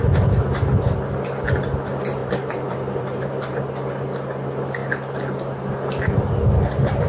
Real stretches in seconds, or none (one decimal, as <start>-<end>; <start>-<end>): 0.0-2.2; 3.6-7.1